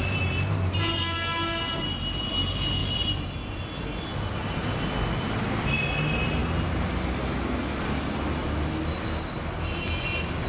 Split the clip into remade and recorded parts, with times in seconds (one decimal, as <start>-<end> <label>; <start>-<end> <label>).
0.0-2.8 recorded; 2.8-5.9 remade; 5.9-10.5 recorded